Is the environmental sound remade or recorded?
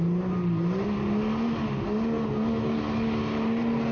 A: recorded